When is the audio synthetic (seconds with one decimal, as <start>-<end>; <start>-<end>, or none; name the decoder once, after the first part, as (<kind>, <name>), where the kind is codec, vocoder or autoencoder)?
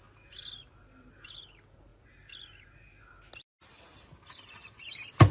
none